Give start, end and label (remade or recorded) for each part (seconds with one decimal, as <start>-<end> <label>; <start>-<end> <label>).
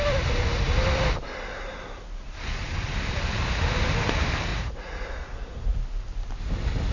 0.0-4.5 recorded; 4.5-5.8 remade; 5.8-6.9 recorded